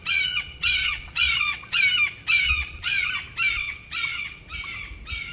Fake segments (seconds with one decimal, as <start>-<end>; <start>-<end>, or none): 0.0-1.8; 2.3-3.1; 3.6-4.4